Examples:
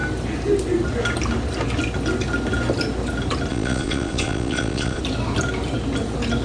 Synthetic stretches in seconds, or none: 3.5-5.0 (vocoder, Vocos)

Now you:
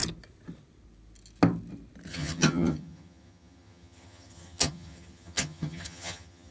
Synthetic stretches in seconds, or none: 2.1-6.5 (vocoder, HiFi-GAN)

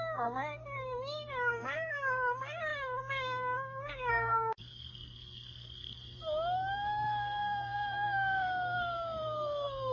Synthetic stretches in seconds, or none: 0.0-9.9 (codec, SNAC)

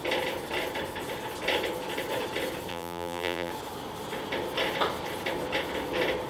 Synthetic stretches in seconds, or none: 2.7-3.5 (vocoder, BigVGAN v2)

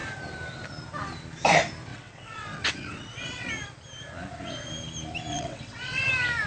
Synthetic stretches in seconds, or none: 1.9-3.5 (vocoder, WaveNeXt); 5.3-6.1

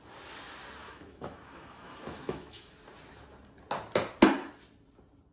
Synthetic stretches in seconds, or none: 0.8-2.7 (autoencoder, DAC-VAE)

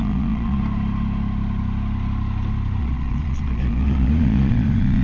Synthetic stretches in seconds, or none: 0.0-0.6 (vocoder, Vocos); 2.8-5.0

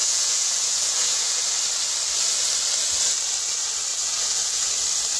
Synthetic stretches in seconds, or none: 0.0-1.4 (vocoder, Vocos); 3.9-4.7